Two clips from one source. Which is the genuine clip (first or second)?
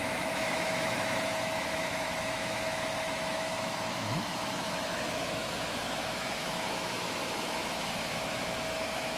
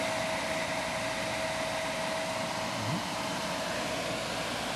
second